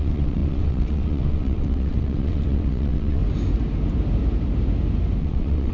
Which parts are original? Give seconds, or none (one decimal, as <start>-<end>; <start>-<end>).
3.2-5.2